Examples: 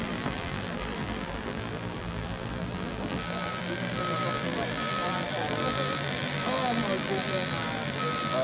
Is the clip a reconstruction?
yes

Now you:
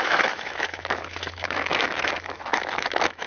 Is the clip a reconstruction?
yes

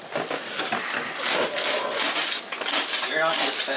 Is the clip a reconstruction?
no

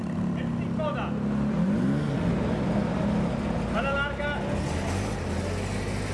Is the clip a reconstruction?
no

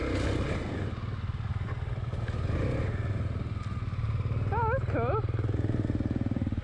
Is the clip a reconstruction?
no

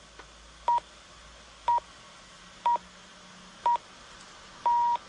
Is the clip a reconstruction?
no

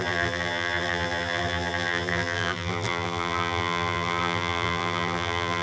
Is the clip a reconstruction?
yes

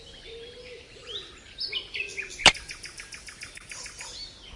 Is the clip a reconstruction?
no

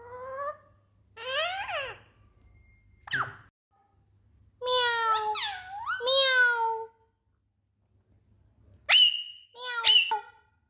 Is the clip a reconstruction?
no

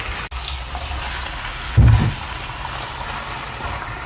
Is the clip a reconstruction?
no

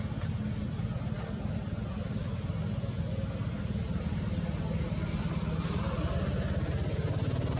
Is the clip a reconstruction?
no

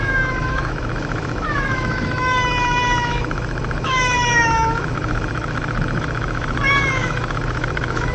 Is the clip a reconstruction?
yes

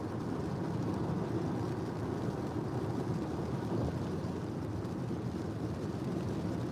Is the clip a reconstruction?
no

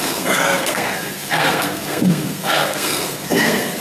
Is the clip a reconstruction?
yes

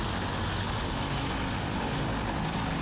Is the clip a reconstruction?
no